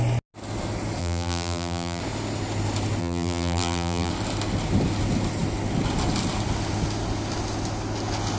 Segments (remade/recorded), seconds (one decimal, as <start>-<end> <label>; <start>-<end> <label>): 0.0-1.0 recorded; 1.0-2.0 remade; 2.0-3.0 recorded; 3.0-4.1 remade; 4.1-8.4 recorded